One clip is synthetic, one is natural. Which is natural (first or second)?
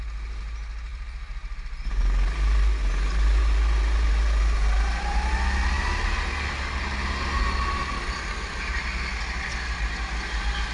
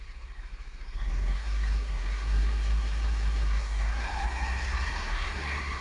first